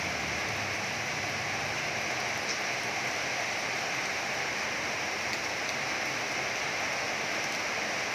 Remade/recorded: recorded